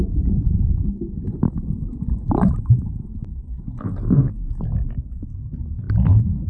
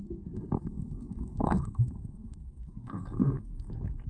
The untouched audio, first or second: first